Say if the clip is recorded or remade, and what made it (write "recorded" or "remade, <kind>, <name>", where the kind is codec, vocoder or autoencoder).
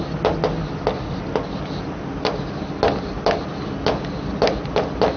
recorded